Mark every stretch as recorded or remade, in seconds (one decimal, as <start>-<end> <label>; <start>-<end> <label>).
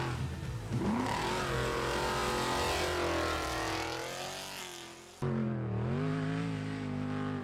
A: 0.0-7.4 recorded